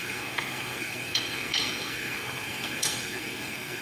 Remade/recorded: remade